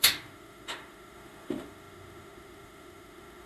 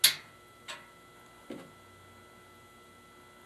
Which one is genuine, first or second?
second